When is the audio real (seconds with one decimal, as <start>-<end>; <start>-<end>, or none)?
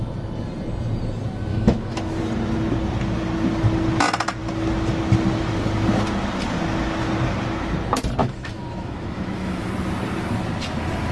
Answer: 0.0-1.5; 2.2-8.2; 9.7-11.1